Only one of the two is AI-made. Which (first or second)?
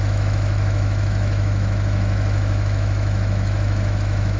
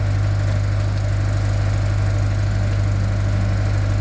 first